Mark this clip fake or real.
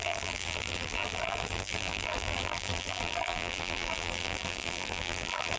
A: fake